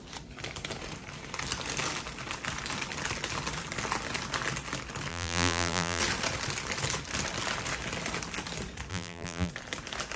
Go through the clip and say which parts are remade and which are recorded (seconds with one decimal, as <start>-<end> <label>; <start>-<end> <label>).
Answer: 0.0-5.1 recorded; 5.1-6.0 remade; 6.0-8.9 recorded; 8.9-9.5 remade; 9.5-10.2 recorded